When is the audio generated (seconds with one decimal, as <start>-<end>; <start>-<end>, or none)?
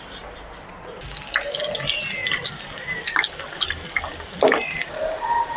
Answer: none